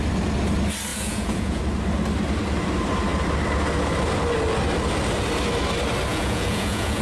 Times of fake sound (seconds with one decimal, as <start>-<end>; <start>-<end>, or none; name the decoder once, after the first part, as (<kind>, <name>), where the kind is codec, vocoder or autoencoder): 0.9-1.6 (vocoder, Vocos); 6.1-7.0